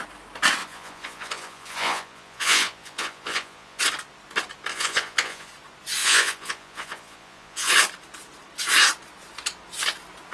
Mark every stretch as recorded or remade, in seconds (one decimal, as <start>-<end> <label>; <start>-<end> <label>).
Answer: 0.0-0.6 recorded; 0.6-3.8 remade; 3.8-4.7 recorded; 4.7-5.5 remade; 5.5-6.0 recorded; 6.0-7.7 remade; 7.7-10.3 recorded